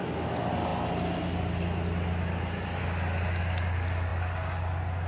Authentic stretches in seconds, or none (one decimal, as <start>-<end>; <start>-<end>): 0.0-5.1